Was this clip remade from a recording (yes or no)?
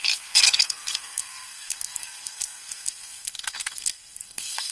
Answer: yes